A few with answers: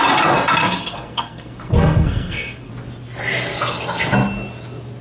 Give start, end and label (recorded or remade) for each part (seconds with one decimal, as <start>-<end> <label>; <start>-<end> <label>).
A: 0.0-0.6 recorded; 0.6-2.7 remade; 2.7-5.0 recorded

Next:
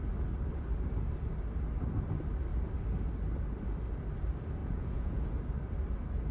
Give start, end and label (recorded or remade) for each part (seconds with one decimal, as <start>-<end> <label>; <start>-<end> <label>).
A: 0.0-4.6 recorded; 4.6-5.3 remade; 5.3-6.3 recorded

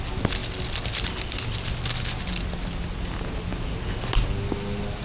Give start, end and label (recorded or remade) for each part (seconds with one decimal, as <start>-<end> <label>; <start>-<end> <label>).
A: 0.0-3.5 recorded; 3.5-4.0 remade; 4.0-5.0 recorded

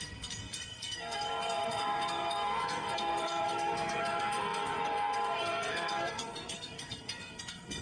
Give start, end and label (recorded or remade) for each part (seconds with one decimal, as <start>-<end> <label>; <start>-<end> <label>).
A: 0.0-7.8 remade